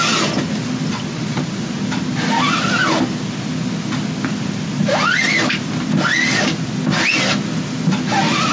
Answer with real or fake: real